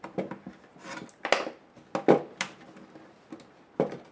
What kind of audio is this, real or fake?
real